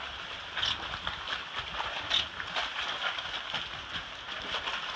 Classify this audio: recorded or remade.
recorded